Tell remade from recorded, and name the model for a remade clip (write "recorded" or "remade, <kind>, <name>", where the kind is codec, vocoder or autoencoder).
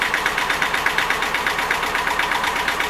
remade, vocoder, BigVGAN v2